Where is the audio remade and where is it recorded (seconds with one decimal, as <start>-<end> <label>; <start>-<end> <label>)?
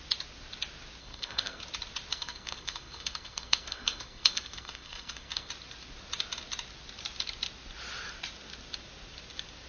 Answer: 0.0-1.0 recorded; 1.0-1.6 remade; 1.6-2.1 recorded; 2.1-5.5 remade; 5.5-9.7 recorded